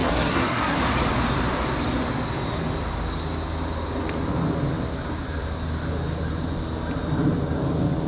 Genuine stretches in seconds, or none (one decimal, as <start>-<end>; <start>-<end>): 0.8-8.1